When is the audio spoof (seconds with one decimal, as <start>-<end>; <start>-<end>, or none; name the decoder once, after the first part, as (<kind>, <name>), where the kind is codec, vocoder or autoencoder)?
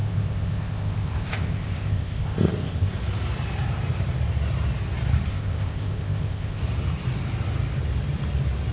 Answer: 0.0-2.9 (codec, ZipCodec); 5.3-6.6